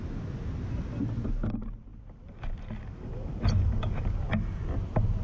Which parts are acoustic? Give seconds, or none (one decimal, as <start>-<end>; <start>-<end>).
0.0-5.2